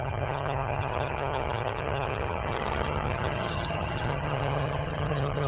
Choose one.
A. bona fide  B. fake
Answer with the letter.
B